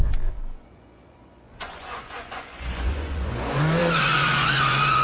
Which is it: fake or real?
fake